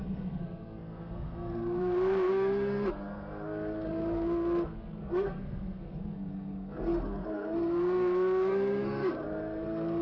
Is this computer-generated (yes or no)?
yes